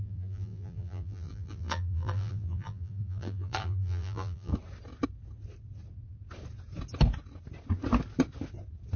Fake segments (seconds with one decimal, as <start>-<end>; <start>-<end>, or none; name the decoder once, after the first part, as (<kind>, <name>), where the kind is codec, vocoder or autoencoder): 0.0-4.5 (vocoder, BigVGAN v2)